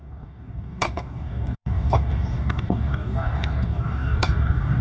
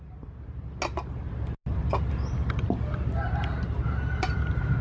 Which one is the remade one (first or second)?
first